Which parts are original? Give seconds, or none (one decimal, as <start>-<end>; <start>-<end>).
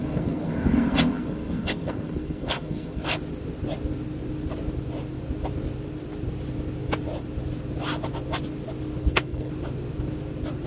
3.2-9.0; 9.5-10.7